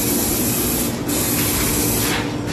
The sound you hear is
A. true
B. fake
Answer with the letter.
A